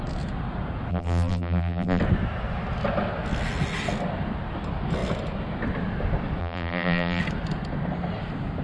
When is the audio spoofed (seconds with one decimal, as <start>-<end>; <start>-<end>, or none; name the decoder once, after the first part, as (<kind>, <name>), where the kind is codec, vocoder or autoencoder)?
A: 0.9-2.0 (vocoder, BigVGAN v2); 6.4-7.2

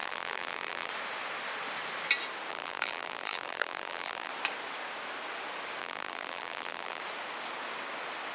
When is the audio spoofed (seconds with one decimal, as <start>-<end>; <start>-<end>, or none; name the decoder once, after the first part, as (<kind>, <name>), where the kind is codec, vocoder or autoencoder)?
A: 0.0-0.9 (vocoder, BigVGAN v2); 2.5-4.3; 5.8-7.0

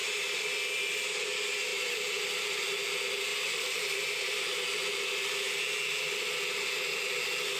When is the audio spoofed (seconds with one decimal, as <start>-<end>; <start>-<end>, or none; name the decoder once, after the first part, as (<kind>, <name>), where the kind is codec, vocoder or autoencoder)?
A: 1.7-2.3 (vocoder, BigVGAN v2); 3.3-4.4

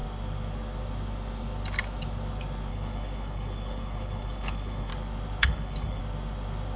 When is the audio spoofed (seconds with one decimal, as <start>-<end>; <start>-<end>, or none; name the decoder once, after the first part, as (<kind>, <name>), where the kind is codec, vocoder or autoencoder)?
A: 2.7-4.9 (codec, HILCodec); 5.4-6.0

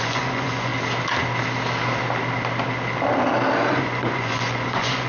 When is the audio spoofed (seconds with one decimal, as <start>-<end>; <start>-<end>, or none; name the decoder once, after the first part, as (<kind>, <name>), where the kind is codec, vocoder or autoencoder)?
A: 0.0-0.7 (vocoder, Vocos); 3.7-5.1

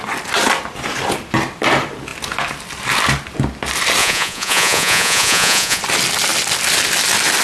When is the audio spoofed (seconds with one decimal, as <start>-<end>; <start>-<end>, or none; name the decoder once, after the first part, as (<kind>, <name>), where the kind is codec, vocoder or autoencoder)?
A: 4.0-5.8 (vocoder, Vocos)